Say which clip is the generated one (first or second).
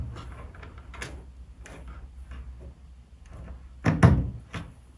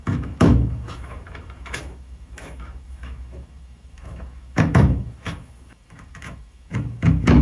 second